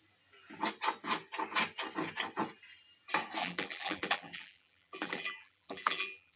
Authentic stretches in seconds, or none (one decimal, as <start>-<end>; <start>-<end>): 0.0-3.4